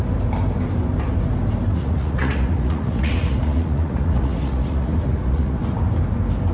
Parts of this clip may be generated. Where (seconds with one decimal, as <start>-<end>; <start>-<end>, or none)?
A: 1.7-5.6